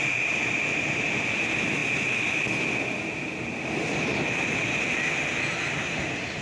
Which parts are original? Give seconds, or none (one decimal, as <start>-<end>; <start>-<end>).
0.0-6.4